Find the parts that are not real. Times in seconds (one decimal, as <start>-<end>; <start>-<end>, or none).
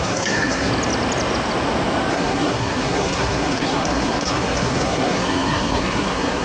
0.0-0.7; 2.1-6.4